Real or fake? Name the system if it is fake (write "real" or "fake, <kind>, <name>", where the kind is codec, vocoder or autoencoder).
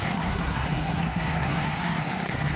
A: fake, codec, SNAC